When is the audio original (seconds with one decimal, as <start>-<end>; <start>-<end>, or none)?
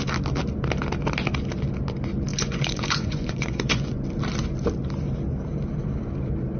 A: 0.0-2.3; 4.0-6.6